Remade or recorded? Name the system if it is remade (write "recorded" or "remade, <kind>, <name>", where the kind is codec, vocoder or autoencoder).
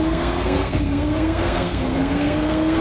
remade, codec, SNAC